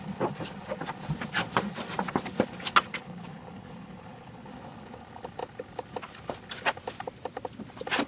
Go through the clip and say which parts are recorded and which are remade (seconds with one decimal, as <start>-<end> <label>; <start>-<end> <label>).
0.0-2.9 recorded; 2.9-4.5 remade; 4.5-8.1 recorded

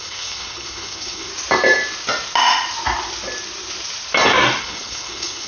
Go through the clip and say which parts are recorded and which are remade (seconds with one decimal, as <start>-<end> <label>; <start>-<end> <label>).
0.0-1.3 remade; 1.3-4.6 recorded; 4.6-5.5 remade

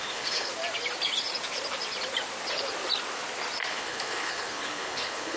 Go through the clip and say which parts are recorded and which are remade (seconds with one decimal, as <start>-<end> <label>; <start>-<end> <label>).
0.0-0.5 remade; 0.5-3.7 recorded; 3.7-5.4 remade

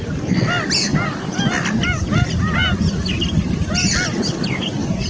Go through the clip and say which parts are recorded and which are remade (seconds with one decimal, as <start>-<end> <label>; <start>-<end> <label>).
0.0-5.1 recorded

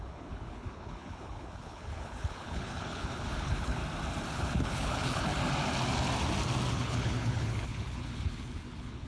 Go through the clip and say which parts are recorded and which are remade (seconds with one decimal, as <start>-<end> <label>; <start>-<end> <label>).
0.0-3.8 remade; 3.8-4.3 recorded; 4.3-5.3 remade; 5.3-6.7 recorded; 6.7-9.1 remade

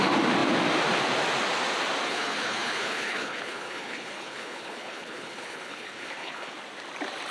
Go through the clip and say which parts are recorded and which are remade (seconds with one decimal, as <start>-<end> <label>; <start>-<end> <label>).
0.0-2.1 recorded; 2.1-6.5 remade; 6.5-7.3 recorded